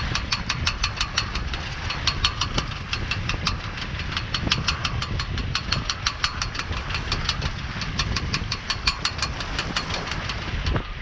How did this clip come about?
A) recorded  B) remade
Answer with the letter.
A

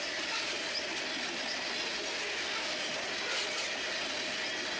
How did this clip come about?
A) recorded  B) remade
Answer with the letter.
A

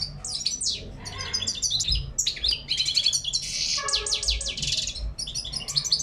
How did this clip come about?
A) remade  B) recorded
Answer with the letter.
B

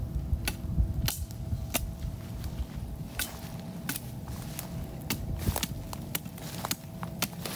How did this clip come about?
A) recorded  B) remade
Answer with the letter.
A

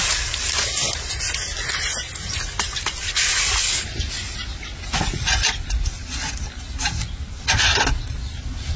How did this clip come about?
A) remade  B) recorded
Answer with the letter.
B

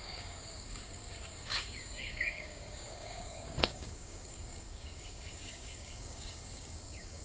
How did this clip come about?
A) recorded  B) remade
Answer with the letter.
B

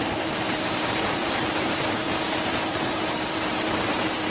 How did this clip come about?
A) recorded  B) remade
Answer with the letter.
B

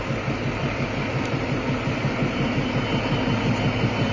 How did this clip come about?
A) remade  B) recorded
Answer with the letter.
B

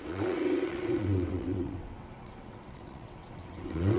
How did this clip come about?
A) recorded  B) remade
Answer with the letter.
B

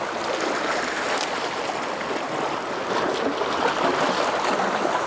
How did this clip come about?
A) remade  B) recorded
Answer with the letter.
B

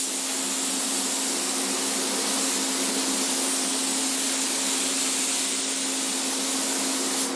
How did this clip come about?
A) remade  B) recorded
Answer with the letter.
B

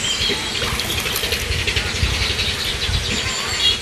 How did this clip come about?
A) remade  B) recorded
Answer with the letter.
B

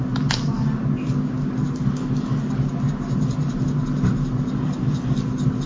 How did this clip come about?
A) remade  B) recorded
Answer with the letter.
B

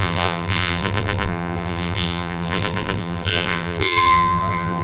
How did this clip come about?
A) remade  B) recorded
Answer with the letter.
A